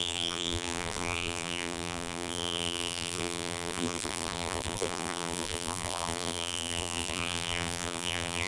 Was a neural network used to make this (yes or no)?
yes